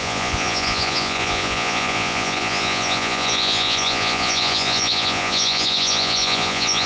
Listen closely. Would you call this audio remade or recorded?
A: remade